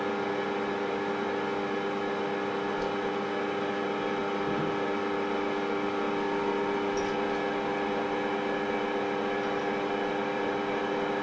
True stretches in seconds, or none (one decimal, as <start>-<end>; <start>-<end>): 0.0-11.2